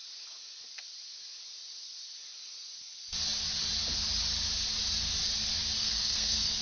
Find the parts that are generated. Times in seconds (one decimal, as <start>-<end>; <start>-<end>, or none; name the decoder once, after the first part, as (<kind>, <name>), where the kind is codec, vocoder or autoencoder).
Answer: 5.8-6.6 (codec, SNAC)